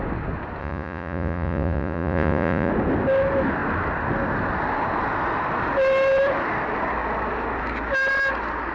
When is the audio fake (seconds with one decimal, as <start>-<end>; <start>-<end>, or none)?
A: 0.6-2.7

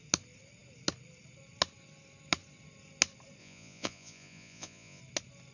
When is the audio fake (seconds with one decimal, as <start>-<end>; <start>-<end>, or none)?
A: 3.4-5.0

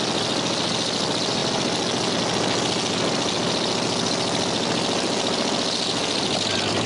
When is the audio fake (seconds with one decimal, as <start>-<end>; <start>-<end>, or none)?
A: none

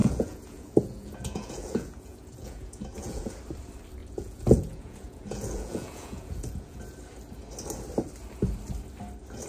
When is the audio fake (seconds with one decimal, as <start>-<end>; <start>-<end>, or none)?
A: 0.0-3.3; 4.0-6.8

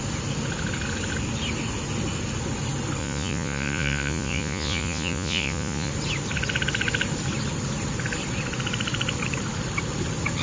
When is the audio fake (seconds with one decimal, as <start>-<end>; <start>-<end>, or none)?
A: 3.0-5.9

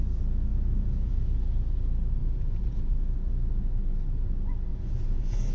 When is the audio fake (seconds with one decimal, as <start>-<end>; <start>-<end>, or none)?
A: 0.5-1.4; 2.2-2.9; 4.7-5.5

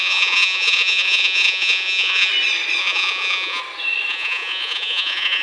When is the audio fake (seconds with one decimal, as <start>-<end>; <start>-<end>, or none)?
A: 0.0-2.3; 2.8-3.6; 4.1-5.4